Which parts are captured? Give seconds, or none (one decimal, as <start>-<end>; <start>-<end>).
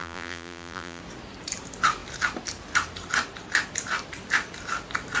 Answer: 1.0-5.2